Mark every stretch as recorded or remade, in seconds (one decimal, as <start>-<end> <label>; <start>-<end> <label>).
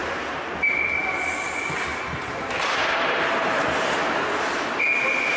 0.0-0.7 remade; 0.7-1.9 recorded; 1.9-4.0 remade; 4.0-5.4 recorded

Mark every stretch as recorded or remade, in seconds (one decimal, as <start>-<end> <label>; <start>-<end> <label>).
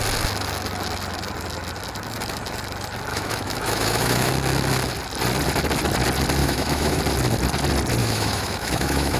0.0-3.1 recorded; 3.1-4.3 remade; 4.3-6.4 recorded; 6.4-7.0 remade; 7.0-8.0 recorded; 8.0-9.2 remade